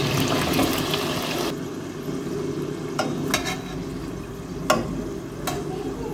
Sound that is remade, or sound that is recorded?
recorded